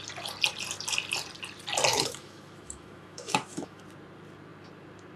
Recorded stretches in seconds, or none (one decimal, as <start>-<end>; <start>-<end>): 0.0-1.9; 3.8-5.2